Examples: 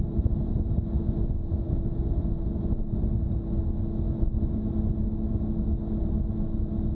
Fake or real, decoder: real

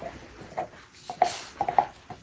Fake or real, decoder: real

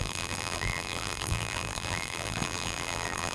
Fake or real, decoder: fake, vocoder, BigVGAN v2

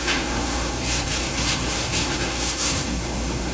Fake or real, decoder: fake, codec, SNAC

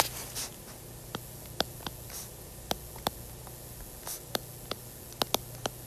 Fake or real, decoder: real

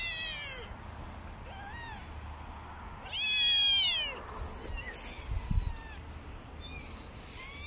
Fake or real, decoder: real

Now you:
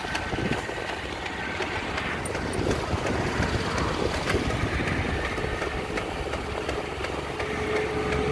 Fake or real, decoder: real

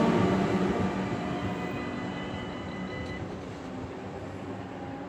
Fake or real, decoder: real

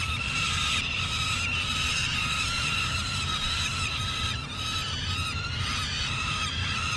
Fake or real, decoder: fake, vocoder, BigVGAN v2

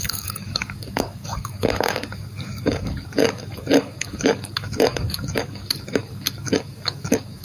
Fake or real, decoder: fake, codec, DAC